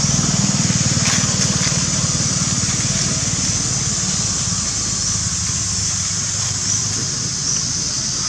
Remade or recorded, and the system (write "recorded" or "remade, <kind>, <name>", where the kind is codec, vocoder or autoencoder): recorded